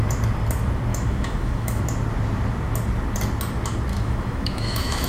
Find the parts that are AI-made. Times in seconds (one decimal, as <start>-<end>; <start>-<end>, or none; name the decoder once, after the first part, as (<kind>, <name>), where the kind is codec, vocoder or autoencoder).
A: 0.9-1.8 (autoencoder, DAC-VAE); 3.9-5.1

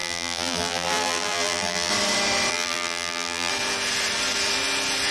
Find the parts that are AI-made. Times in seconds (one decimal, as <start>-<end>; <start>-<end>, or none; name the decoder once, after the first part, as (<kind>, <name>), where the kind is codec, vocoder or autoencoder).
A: 0.0-1.9 (vocoder, BigVGAN v2); 2.5-3.5

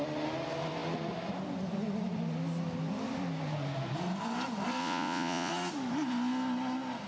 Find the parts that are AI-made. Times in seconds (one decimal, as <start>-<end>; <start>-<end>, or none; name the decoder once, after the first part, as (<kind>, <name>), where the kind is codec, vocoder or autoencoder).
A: 4.8-5.5 (vocoder, Vocos)